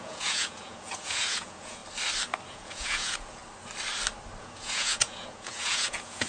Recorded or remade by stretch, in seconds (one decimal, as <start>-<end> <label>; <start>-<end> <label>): 0.0-1.8 remade; 1.8-2.5 recorded; 2.5-3.4 remade; 3.4-4.4 recorded; 4.4-6.3 remade